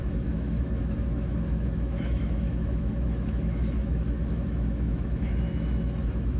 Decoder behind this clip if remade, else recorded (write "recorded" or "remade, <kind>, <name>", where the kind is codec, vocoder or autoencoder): remade, autoencoder, DAC-VAE